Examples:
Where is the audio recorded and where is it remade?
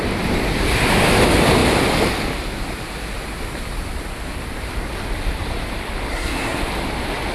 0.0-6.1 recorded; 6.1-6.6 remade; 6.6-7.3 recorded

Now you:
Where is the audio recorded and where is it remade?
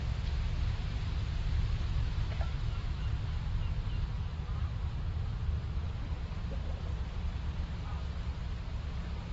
0.0-4.3 recorded; 4.3-7.5 remade; 7.5-8.3 recorded; 8.3-8.9 remade; 8.9-9.3 recorded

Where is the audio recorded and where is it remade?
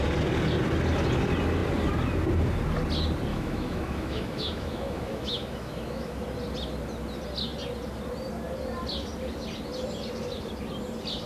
0.0-3.3 recorded; 3.3-6.2 remade; 6.2-11.3 recorded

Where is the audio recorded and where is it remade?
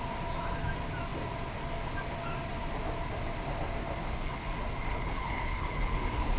0.0-4.0 recorded; 4.0-4.5 remade; 4.5-4.9 recorded; 4.9-6.4 remade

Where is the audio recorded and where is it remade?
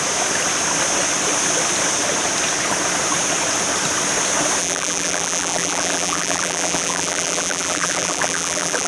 0.0-4.6 recorded; 4.6-8.9 remade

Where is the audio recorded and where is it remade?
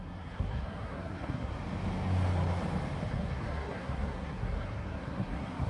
0.0-1.5 remade; 1.5-3.1 recorded; 3.1-5.7 remade